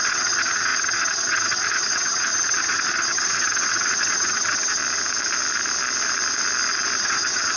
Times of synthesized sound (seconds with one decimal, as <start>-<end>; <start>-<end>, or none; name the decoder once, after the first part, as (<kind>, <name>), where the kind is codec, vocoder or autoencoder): 0.0-4.8 (vocoder, HiFi-GAN); 7.0-7.6

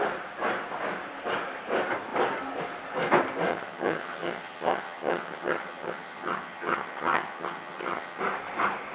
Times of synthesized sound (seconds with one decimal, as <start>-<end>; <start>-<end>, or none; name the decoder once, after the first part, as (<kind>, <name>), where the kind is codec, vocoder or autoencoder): 3.5-8.2 (vocoder, HiFi-GAN)

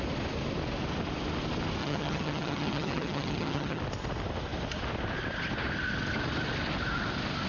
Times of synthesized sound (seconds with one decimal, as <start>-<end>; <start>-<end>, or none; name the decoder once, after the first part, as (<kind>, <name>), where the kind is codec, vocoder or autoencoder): 1.8-3.8 (vocoder, HiFi-GAN)